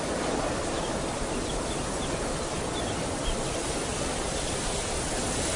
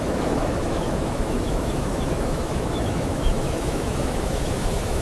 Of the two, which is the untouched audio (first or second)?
first